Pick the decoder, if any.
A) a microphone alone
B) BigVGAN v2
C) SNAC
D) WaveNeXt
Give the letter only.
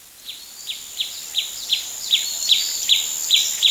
A